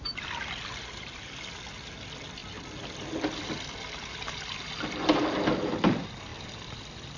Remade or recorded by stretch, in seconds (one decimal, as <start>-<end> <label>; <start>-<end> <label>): 0.0-7.2 recorded